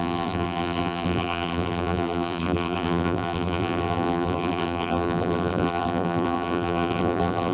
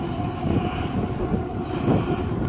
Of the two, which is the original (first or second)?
second